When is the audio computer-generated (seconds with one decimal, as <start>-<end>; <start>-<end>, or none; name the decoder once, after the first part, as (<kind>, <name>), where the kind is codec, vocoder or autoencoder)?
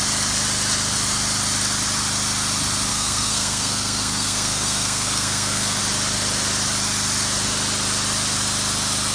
2.9-5.8 (codec, SNAC)